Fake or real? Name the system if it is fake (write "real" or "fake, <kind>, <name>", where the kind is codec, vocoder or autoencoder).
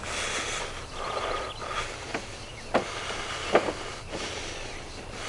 real